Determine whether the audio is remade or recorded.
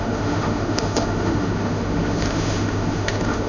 remade